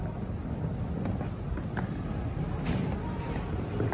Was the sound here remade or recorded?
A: recorded